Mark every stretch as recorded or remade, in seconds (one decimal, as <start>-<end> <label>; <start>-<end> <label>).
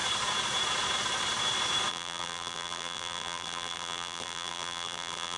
0.0-1.9 recorded; 1.9-5.4 remade